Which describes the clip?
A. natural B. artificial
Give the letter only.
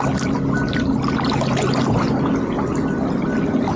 A